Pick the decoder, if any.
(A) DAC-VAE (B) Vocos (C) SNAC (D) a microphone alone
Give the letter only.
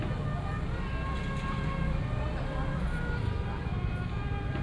D